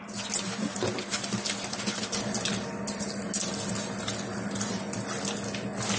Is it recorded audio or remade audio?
recorded